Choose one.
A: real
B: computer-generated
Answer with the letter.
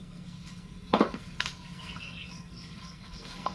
B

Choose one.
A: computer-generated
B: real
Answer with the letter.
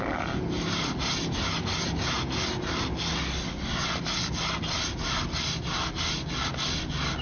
B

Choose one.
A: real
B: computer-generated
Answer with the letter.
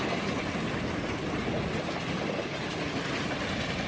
A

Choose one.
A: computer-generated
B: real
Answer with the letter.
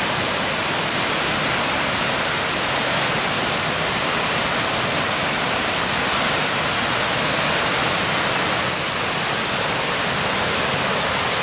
B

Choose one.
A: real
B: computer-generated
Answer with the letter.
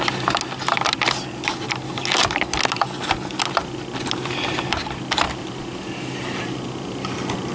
A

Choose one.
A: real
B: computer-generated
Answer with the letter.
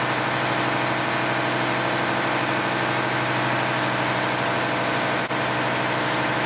A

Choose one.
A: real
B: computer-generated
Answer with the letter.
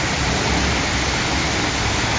A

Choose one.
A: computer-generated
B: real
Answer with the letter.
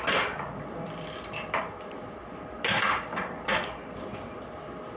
B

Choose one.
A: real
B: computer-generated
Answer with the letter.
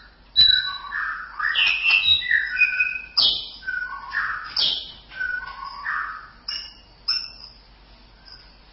A